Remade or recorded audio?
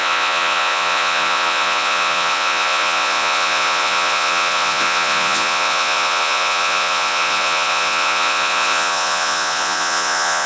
remade